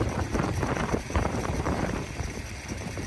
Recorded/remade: remade